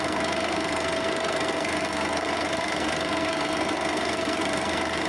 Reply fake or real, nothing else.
fake